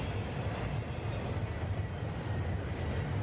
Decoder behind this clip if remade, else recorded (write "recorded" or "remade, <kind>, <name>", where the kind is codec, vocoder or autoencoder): recorded